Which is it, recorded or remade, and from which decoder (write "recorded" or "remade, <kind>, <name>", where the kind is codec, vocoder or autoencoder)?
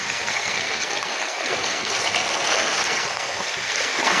remade, codec, SNAC